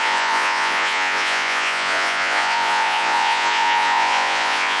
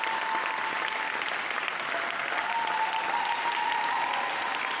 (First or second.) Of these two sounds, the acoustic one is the second